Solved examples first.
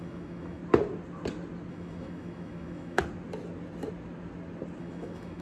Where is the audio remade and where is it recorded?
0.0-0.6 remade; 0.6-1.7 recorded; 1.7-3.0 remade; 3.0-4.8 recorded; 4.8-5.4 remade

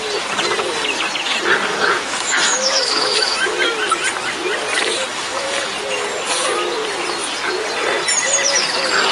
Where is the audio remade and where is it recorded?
0.0-1.7 recorded; 1.7-3.6 remade; 3.6-5.1 recorded; 5.1-5.7 remade; 5.7-9.1 recorded

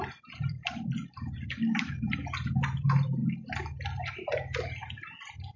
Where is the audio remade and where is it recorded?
0.0-3.2 remade; 3.2-5.6 recorded

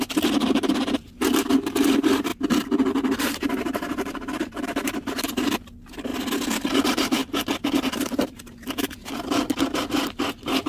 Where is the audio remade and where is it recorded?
0.0-2.3 remade; 2.3-3.2 recorded; 3.2-6.1 remade; 6.1-6.7 recorded; 6.7-7.2 remade; 7.2-7.9 recorded; 7.9-9.0 remade; 9.0-10.7 recorded

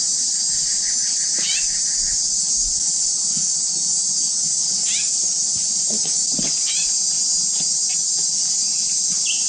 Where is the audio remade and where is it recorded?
0.0-0.4 remade; 0.4-4.5 recorded; 4.5-5.3 remade; 5.3-9.5 recorded